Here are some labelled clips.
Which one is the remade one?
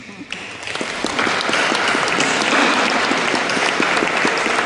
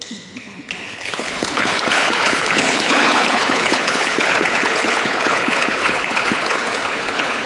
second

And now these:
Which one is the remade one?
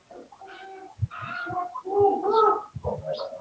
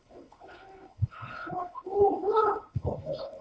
second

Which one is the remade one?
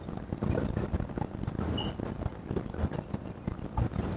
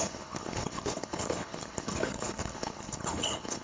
second